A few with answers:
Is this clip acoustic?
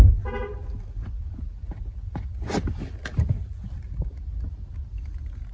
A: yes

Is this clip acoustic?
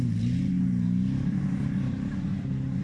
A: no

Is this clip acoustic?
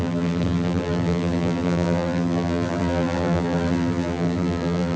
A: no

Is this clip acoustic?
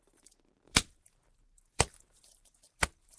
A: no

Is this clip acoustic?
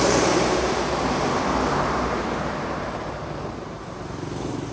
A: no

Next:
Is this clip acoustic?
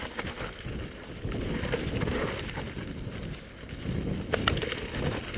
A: yes